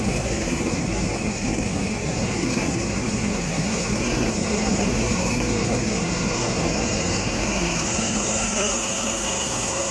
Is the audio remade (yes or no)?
yes